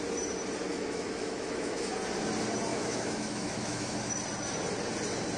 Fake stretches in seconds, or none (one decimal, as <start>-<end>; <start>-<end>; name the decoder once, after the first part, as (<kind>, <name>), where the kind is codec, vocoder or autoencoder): 0.7-1.9 (autoencoder, DAC-VAE); 2.7-4.1